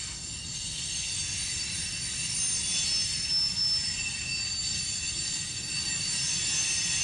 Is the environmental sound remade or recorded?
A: recorded